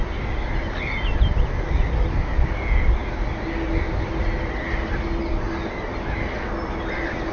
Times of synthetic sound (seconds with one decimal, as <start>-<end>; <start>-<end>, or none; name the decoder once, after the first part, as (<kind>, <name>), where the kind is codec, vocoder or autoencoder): none